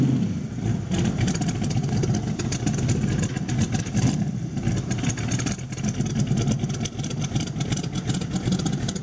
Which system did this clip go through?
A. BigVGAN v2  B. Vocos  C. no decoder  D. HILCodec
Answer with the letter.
C